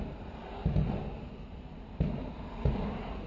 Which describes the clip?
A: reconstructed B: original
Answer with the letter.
B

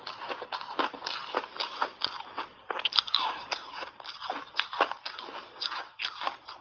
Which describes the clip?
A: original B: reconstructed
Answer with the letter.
A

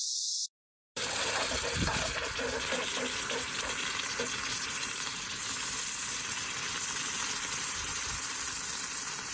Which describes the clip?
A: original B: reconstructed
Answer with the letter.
A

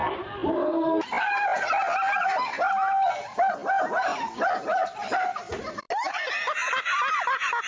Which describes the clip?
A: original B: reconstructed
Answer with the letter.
A